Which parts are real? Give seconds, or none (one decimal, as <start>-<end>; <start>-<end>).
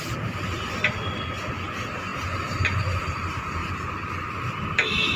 0.0-5.2